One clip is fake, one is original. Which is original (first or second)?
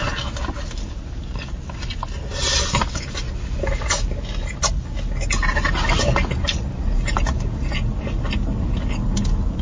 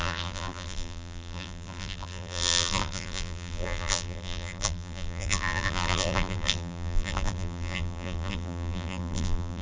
first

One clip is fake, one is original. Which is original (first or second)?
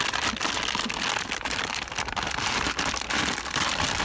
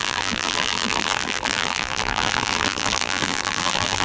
first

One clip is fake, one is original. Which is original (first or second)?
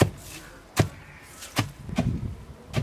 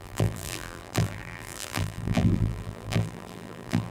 first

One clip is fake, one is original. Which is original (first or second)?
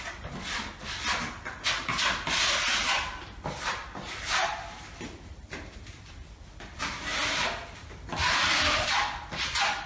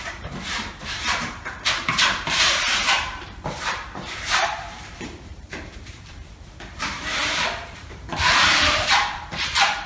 first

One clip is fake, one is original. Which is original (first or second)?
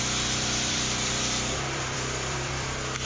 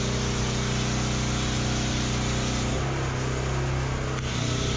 second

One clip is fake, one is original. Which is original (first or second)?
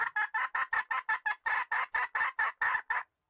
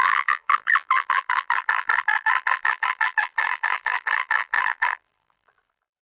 first